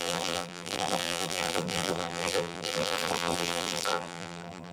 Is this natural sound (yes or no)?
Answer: no